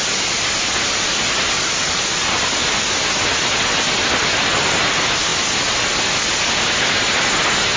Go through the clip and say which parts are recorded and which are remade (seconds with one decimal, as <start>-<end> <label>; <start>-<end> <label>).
0.0-7.8 recorded